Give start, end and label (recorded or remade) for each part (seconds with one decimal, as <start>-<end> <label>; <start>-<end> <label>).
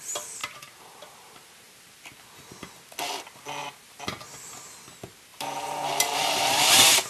0.0-0.4 recorded; 0.4-1.5 remade; 1.5-3.6 recorded; 3.6-4.2 remade; 4.2-5.3 recorded; 5.3-7.1 remade